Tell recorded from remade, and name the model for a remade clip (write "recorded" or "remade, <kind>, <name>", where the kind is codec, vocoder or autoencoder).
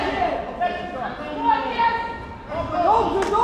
recorded